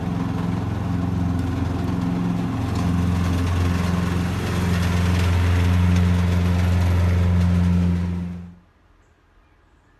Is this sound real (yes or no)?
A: yes